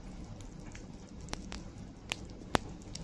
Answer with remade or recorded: recorded